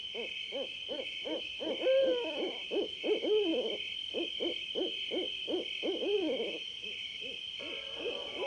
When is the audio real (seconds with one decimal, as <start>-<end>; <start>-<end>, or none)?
0.0-8.5